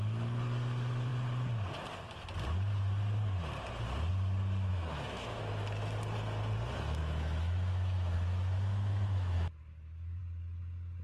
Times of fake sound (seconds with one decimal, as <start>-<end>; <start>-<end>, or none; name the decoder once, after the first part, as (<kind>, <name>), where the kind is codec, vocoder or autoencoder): 4.7-5.4 (autoencoder, DAC-VAE); 7.0-10.2